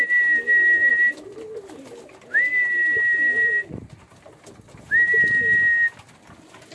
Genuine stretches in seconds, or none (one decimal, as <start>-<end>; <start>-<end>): 0.0-6.7